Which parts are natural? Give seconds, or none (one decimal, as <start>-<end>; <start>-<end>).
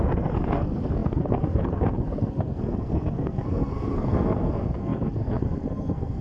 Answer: none